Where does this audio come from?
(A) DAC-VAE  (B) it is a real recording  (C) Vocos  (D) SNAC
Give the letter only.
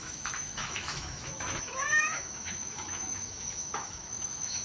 A